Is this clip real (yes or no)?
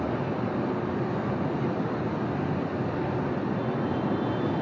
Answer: yes